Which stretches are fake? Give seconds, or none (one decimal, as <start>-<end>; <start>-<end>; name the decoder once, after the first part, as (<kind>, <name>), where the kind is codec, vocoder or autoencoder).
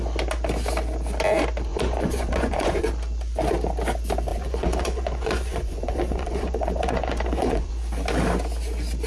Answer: 1.7-2.9 (vocoder, Vocos); 4.3-7.7